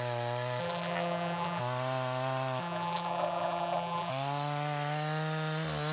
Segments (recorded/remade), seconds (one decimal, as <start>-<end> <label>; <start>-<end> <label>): 0.0-0.6 recorded; 0.6-1.6 remade; 1.6-2.6 recorded; 2.6-4.1 remade; 4.1-5.9 recorded